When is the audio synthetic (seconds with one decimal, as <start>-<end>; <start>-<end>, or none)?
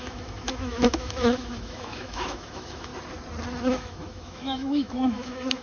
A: 0.0-2.9; 3.6-5.6